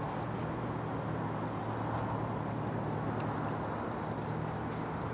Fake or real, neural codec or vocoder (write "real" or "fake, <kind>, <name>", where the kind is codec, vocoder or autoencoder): real